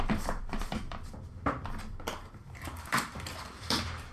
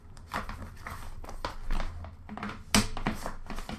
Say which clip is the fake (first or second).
first